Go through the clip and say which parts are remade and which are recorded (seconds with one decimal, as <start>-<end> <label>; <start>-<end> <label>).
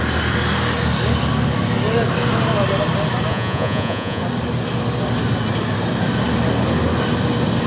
0.0-3.3 recorded; 3.3-4.2 remade; 4.2-7.7 recorded